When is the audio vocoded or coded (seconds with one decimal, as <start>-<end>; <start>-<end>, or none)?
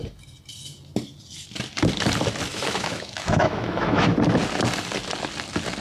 2.5-4.1